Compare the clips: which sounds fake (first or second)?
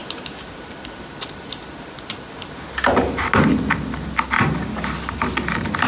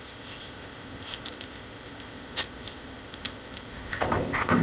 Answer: second